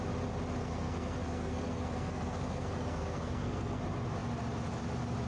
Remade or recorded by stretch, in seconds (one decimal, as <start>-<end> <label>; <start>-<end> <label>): 0.0-0.6 recorded; 0.6-3.8 remade; 3.8-5.3 recorded